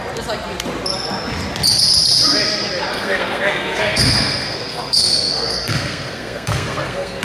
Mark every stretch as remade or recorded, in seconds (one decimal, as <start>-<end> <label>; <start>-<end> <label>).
0.0-2.9 recorded; 2.9-7.2 remade